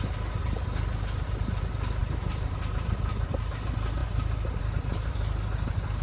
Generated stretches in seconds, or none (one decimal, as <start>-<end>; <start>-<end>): 0.4-1.6; 2.0-3.4